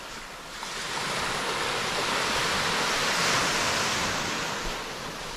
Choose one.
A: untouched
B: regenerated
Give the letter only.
A